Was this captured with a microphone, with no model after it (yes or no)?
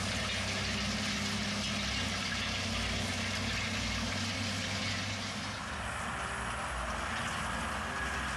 yes